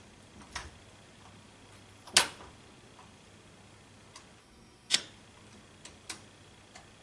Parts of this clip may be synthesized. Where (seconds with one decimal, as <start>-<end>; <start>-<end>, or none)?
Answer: 4.4-5.0